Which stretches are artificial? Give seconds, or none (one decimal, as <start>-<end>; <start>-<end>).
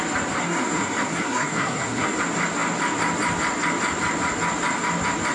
0.4-2.2